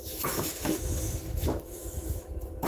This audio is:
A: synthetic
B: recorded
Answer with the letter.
A